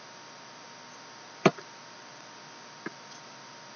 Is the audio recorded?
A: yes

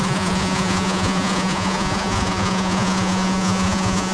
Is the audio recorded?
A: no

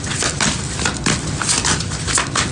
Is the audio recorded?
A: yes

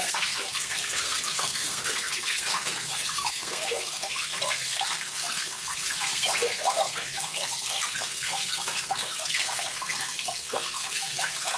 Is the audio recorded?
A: no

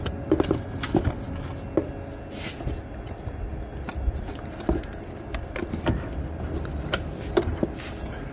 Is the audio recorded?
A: yes